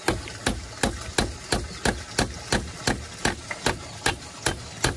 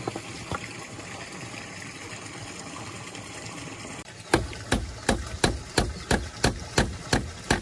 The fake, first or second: second